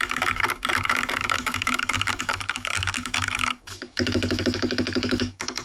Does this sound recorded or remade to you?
remade